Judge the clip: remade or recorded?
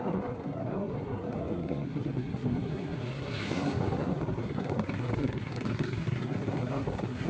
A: remade